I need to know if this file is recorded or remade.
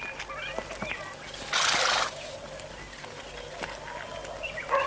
recorded